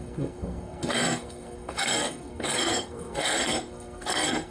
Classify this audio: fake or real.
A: fake